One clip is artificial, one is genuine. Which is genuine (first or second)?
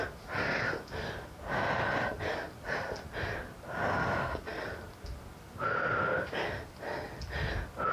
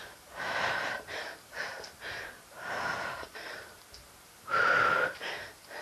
first